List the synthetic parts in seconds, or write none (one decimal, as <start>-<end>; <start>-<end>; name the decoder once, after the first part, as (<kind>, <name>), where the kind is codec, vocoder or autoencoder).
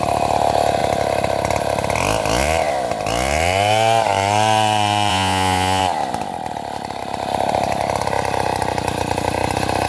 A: 5.1-5.8 (vocoder, Vocos)